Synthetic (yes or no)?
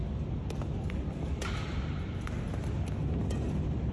no